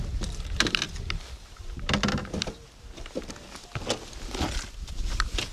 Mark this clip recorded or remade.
recorded